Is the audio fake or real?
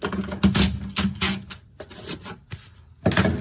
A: real